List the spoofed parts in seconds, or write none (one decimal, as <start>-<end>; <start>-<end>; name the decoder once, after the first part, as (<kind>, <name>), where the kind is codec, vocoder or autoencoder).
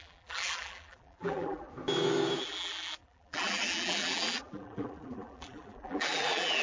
0.0-1.7 (vocoder, BigVGAN v2); 2.4-6.6